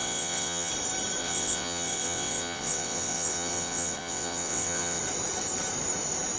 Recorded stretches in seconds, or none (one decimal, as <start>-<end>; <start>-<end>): 0.7-1.2; 5.0-6.4